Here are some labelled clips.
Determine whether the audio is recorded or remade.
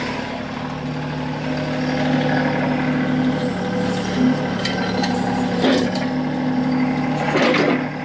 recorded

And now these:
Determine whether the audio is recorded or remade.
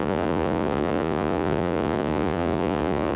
remade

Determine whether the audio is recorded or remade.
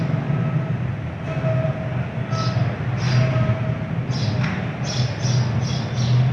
recorded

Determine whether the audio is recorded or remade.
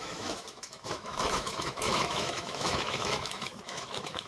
remade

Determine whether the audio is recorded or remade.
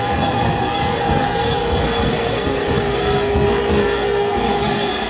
remade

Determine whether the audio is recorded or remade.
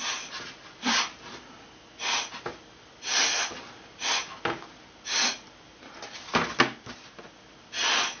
recorded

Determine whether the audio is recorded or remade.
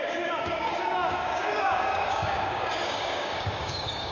remade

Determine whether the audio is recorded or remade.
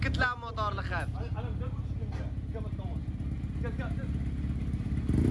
recorded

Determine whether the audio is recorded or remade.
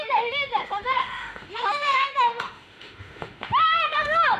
remade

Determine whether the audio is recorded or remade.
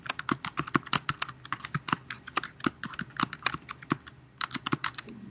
recorded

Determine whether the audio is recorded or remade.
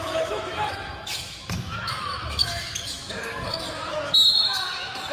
remade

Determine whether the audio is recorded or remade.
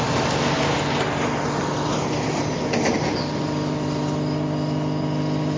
recorded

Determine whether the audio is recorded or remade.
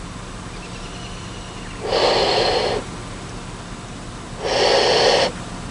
recorded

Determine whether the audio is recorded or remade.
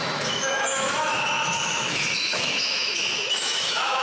remade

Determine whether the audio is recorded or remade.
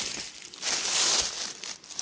recorded